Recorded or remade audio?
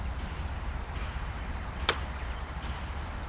remade